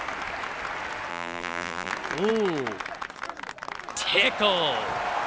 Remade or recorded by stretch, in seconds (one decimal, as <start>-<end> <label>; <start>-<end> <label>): 0.0-1.1 recorded; 1.1-1.9 remade; 1.9-5.3 recorded